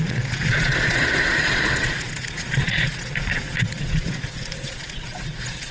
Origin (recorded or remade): remade